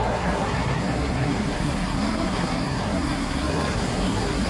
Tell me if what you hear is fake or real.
fake